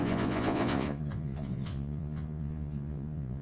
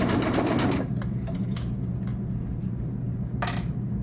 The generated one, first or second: first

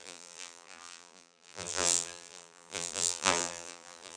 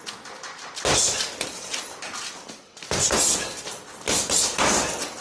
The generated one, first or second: first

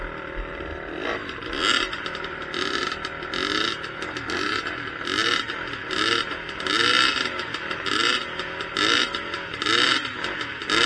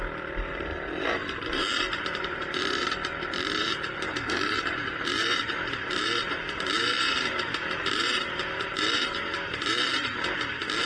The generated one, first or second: second